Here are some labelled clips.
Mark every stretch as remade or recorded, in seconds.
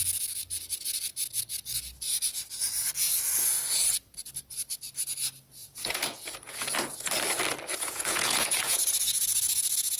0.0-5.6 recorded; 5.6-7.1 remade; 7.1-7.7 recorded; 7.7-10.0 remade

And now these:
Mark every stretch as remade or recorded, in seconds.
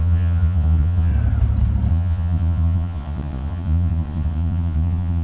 0.0-1.1 remade; 1.1-1.9 recorded; 1.9-5.2 remade